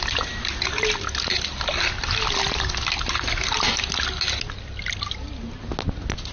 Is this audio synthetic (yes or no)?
no